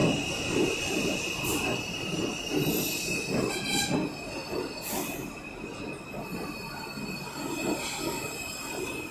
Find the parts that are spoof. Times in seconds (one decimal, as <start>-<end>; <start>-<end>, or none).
1.5-2.7